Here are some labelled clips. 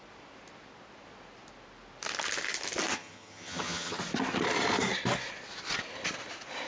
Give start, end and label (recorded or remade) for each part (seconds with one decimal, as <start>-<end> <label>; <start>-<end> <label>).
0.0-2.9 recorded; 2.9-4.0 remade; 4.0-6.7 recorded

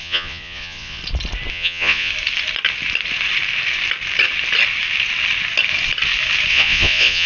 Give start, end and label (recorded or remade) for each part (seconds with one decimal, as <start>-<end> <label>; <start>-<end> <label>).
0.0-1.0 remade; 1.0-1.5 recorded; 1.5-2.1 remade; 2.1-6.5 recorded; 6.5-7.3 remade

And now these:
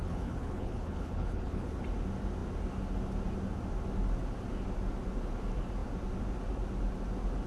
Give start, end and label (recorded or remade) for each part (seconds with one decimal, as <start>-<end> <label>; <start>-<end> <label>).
0.0-1.8 remade; 1.8-7.5 recorded

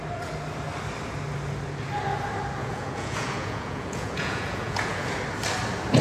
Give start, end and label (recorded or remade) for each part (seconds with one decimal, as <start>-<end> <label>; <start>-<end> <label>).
0.0-2.6 recorded; 2.6-5.1 remade; 5.1-6.0 recorded